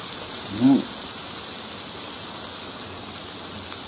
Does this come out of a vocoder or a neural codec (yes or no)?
no